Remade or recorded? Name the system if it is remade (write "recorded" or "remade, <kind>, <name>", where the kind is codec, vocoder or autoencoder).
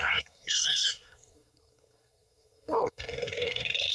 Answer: remade, codec, SNAC